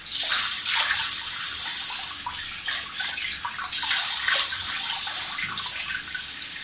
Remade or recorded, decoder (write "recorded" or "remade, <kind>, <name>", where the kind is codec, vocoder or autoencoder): recorded